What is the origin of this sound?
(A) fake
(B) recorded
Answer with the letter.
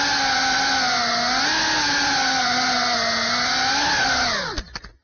B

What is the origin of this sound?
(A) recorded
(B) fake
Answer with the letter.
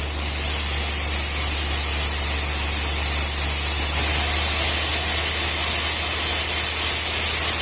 A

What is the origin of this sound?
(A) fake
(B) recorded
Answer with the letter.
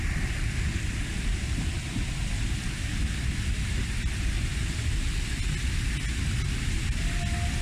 B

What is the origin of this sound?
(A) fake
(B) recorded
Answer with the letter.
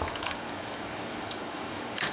A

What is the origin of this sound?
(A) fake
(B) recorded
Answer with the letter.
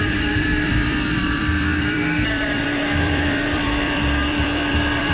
A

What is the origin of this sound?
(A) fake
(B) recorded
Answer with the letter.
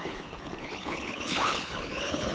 A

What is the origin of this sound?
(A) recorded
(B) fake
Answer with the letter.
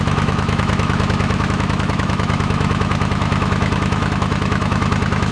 B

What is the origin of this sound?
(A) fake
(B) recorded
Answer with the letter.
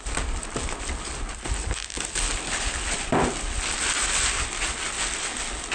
B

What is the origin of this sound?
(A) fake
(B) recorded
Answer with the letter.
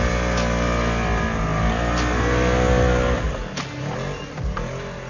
B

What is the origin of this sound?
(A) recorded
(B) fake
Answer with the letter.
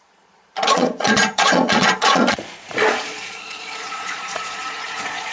B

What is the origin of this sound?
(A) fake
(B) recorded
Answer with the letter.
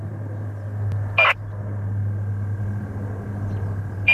B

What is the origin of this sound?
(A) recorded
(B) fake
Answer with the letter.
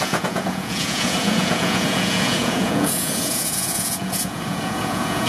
B